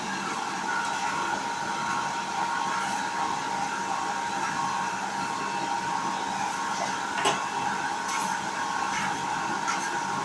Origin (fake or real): real